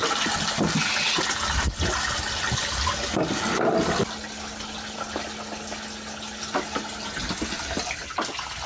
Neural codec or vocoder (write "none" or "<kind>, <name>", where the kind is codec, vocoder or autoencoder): none